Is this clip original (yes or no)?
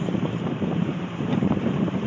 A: no